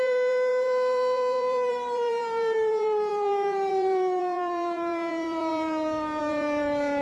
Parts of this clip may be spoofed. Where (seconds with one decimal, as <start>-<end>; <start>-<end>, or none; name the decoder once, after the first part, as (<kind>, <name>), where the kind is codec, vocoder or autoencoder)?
0.0-7.0 (vocoder, BigVGAN v2)